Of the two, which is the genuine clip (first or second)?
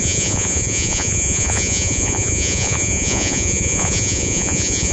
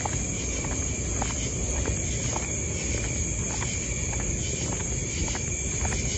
second